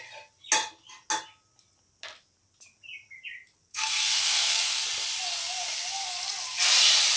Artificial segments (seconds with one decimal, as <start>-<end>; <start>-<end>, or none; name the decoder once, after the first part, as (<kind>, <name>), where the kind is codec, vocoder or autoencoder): 3.7-4.8 (codec, SNAC)